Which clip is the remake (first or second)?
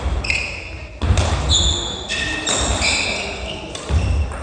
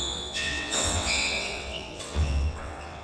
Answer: second